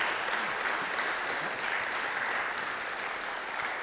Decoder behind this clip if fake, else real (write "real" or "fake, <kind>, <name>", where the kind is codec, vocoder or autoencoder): real